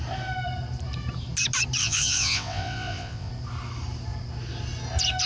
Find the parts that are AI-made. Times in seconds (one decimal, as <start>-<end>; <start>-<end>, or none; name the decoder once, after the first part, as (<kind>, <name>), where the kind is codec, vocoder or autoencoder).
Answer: 1.8-3.3 (vocoder, WaveNeXt)